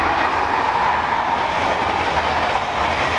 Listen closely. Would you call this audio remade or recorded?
recorded